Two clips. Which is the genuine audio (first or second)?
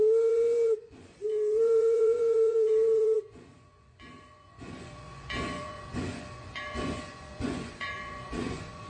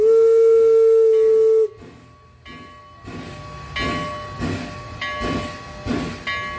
second